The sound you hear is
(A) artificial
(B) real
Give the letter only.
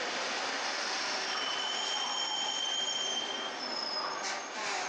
B